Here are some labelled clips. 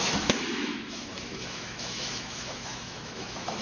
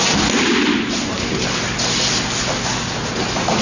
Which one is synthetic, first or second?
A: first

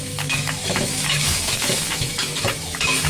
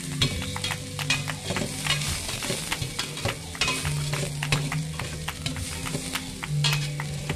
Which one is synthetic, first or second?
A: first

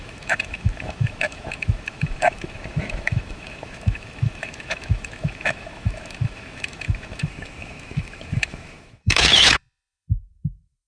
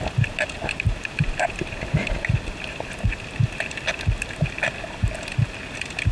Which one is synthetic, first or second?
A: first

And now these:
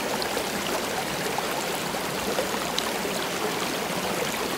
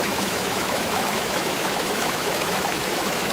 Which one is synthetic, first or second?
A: second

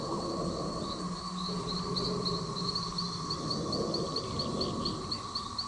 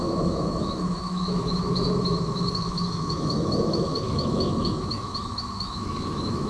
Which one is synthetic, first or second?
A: second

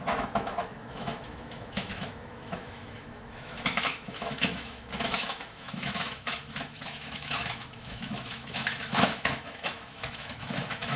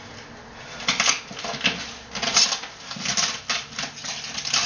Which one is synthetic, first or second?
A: first